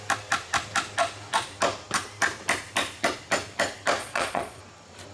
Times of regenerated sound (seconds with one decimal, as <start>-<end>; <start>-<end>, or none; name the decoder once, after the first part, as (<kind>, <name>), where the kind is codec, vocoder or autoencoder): 4.0-4.6 (vocoder, Vocos)